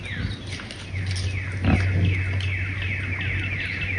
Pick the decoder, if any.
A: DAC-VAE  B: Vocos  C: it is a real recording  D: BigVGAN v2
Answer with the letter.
C